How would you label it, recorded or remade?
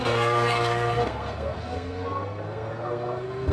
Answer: remade